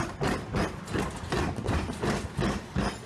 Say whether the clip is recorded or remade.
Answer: recorded